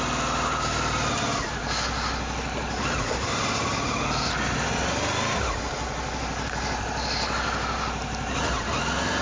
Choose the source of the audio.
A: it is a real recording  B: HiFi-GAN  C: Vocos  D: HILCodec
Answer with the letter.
A